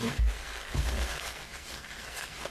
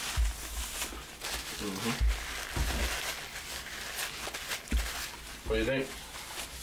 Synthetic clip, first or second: first